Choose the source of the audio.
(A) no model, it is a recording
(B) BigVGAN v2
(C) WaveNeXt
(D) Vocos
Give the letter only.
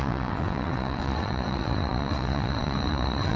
C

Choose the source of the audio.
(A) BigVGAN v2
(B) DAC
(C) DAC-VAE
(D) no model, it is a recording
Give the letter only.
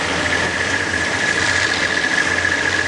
A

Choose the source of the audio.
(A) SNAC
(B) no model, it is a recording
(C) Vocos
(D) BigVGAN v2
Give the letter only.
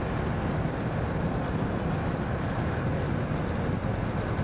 B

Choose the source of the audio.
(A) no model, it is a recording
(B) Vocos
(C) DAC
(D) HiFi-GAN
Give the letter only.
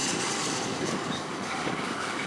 C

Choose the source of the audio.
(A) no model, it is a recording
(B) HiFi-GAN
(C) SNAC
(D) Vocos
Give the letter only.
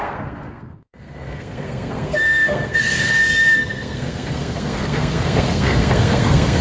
C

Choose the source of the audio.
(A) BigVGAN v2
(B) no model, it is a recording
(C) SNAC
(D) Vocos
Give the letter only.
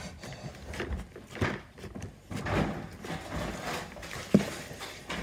B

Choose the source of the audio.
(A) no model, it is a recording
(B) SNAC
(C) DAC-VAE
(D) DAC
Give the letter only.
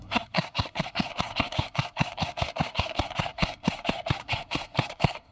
B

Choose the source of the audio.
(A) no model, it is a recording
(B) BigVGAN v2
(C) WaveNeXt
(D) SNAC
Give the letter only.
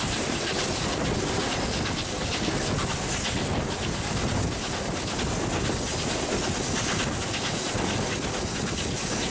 A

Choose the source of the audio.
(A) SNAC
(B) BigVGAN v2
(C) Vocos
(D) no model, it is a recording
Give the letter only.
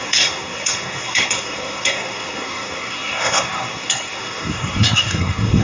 A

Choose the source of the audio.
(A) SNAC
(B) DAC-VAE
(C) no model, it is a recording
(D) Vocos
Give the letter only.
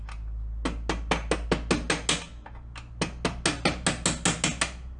C